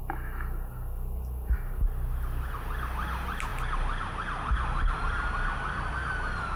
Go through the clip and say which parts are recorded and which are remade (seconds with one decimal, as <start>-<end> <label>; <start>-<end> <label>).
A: 0.0-6.6 recorded